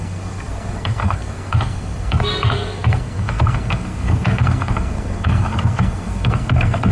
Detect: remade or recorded remade